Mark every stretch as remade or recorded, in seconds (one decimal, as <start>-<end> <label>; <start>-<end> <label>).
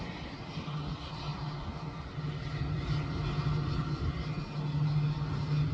0.0-5.7 recorded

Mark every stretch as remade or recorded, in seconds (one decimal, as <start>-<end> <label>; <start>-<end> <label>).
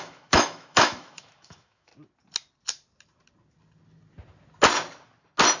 0.0-1.9 remade; 1.9-5.6 recorded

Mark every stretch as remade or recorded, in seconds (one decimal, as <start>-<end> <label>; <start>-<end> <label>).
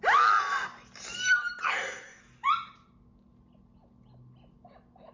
0.0-1.6 recorded; 1.6-2.2 remade; 2.2-5.1 recorded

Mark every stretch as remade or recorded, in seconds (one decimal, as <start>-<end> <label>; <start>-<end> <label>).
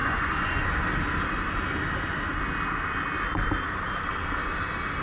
0.0-0.7 remade; 0.7-5.0 recorded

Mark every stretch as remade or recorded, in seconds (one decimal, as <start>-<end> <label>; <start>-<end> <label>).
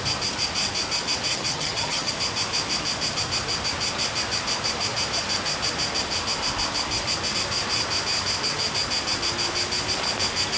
0.0-1.3 recorded; 1.3-2.1 remade; 2.1-10.6 recorded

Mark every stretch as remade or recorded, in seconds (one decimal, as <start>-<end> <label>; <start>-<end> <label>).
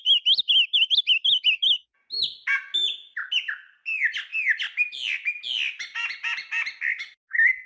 0.0-7.7 recorded